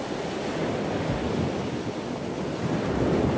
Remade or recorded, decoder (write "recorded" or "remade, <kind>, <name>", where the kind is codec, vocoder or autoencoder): recorded